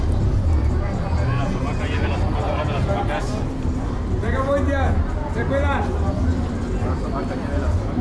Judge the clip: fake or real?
real